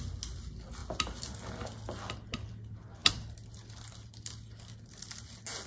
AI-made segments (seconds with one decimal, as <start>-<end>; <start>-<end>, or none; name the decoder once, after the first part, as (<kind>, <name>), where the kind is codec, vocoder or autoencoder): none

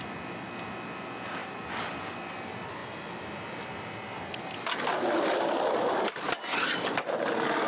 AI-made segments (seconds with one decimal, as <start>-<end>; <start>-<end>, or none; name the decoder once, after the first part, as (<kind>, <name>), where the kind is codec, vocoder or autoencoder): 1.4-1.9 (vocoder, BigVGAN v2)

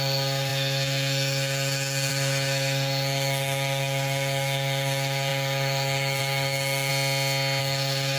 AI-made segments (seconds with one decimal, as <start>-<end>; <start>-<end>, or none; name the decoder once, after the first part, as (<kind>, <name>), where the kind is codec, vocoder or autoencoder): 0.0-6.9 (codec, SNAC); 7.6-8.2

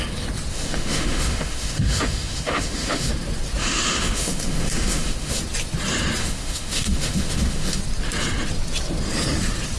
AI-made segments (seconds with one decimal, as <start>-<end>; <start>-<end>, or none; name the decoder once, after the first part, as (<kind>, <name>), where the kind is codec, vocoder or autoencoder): 0.5-3.1 (autoencoder, DAC-VAE); 3.6-5.4; 6.2-7.8